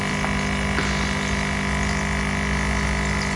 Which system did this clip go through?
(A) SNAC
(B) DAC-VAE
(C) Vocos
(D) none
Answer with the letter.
D